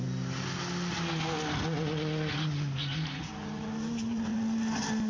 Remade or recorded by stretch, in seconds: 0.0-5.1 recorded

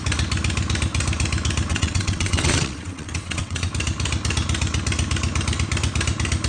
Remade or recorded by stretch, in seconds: 0.0-1.7 recorded; 1.7-3.7 remade; 3.7-6.5 recorded

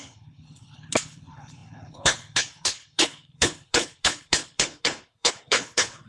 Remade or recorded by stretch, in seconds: 0.0-6.1 remade

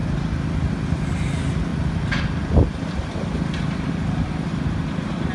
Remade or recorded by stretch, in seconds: 0.0-5.3 recorded

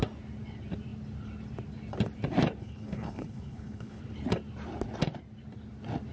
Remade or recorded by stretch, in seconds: 0.0-2.6 recorded; 2.6-4.0 remade; 4.0-6.1 recorded

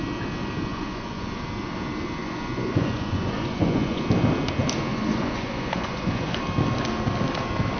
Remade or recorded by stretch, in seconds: 0.0-0.7 recorded; 0.7-1.3 remade; 1.3-2.2 recorded; 2.2-4.0 remade; 4.0-4.9 recorded; 4.9-6.4 remade; 6.4-7.8 recorded